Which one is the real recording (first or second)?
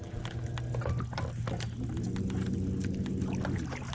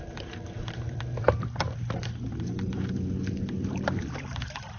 first